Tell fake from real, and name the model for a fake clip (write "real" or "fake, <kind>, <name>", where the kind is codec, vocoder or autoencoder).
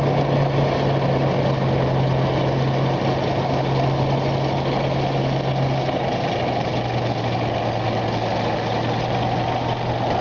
real